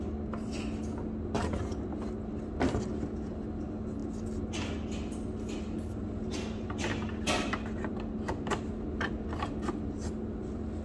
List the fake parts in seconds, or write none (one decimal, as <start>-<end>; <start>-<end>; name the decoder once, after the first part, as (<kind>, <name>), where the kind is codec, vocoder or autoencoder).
none